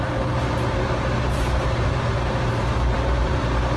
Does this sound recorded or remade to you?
remade